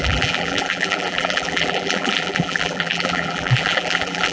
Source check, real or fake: fake